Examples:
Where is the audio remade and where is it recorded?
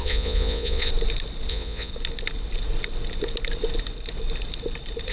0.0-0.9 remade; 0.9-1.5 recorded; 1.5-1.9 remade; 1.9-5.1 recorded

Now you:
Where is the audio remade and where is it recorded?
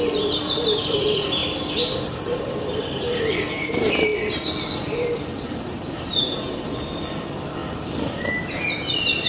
0.0-1.4 remade; 1.4-2.0 recorded; 2.0-7.6 remade; 7.6-8.2 recorded; 8.2-9.3 remade